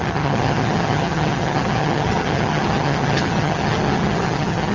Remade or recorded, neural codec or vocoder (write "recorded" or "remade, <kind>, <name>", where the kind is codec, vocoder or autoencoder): remade, vocoder, HiFi-GAN